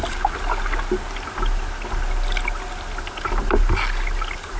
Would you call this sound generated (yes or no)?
no